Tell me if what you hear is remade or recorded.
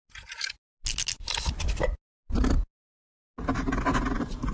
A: recorded